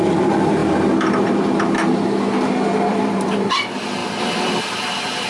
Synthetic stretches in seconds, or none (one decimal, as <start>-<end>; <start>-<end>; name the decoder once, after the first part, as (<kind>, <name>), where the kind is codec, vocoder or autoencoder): 2.9-3.5 (vocoder, BigVGAN v2); 4.0-5.3